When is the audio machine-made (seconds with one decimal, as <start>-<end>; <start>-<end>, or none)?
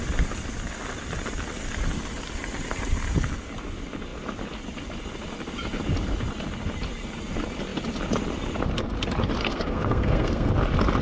9.4-10.5